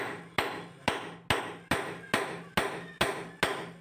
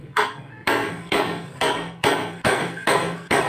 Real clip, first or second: first